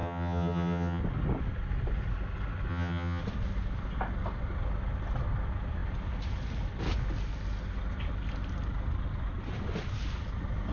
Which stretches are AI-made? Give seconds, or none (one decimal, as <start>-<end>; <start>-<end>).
0.0-1.0; 2.7-3.2